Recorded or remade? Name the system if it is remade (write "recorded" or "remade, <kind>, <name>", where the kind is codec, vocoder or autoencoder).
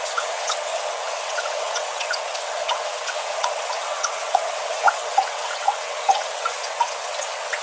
remade, vocoder, WaveNeXt